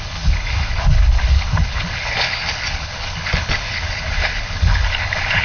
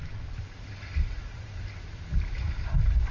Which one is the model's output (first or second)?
first